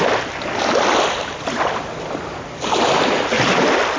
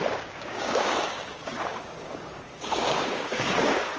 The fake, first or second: second